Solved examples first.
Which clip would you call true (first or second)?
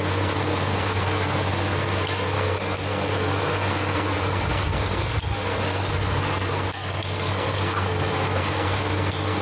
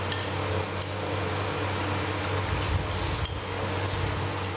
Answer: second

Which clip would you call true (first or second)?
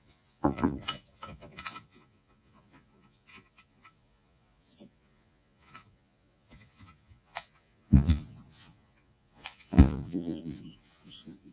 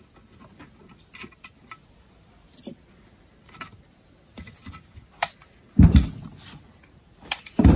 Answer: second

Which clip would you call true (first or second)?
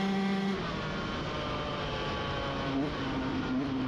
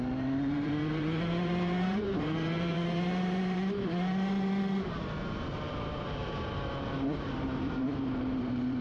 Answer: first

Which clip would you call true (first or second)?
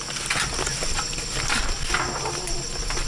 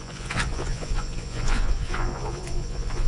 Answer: first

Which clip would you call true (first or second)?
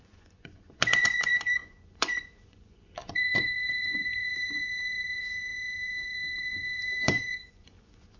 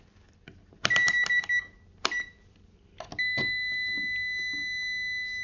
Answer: second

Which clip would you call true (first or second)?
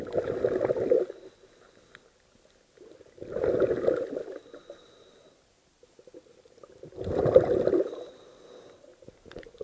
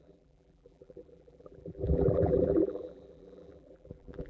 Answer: first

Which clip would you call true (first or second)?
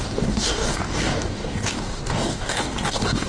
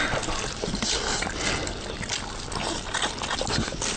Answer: second